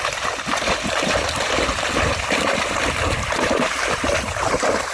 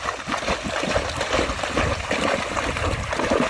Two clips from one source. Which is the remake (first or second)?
first